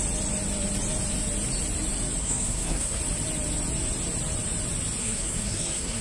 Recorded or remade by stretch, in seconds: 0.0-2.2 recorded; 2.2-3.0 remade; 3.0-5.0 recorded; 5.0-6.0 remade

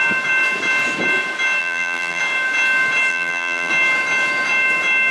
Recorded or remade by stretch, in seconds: 0.0-1.6 recorded; 1.6-2.2 remade; 2.2-3.1 recorded; 3.1-3.7 remade; 3.7-5.1 recorded